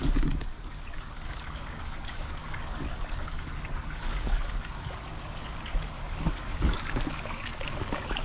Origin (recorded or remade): remade